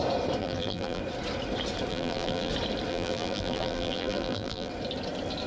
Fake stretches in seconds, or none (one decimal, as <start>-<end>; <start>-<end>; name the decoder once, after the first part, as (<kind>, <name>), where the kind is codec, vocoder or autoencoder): 0.4-1.0 (vocoder, BigVGAN v2); 1.9-2.5; 2.9-4.7